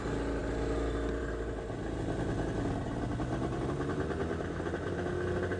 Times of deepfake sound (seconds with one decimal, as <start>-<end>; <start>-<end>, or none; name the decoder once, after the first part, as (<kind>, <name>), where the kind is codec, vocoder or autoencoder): none